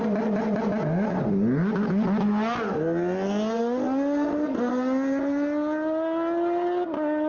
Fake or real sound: real